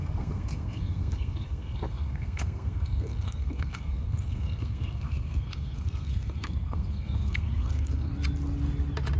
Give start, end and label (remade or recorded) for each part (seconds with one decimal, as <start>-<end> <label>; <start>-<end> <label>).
0.0-8.1 remade; 8.1-9.2 recorded